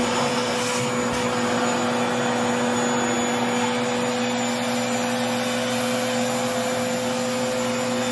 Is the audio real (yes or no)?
yes